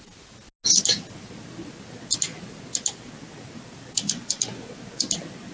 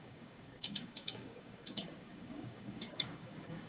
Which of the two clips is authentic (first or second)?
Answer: first